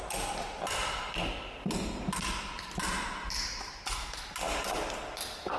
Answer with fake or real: real